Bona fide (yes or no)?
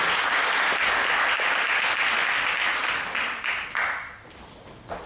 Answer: yes